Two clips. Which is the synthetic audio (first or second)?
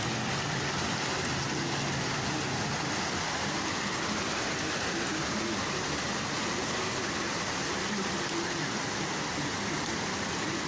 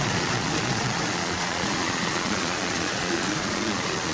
second